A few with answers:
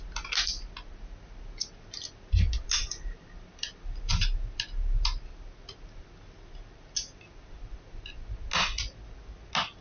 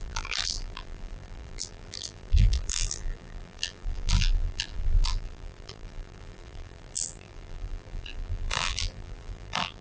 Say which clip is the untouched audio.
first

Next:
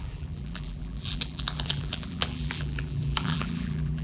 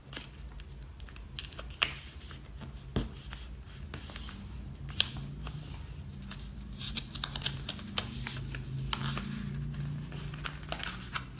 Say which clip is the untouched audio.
second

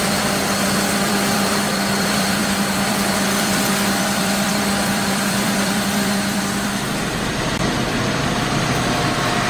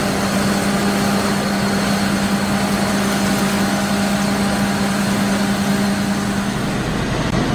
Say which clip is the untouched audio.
second